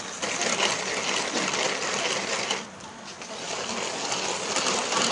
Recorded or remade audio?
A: recorded